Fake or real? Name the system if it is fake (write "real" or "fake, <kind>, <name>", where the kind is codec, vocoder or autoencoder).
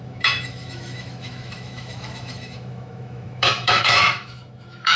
fake, autoencoder, DAC-VAE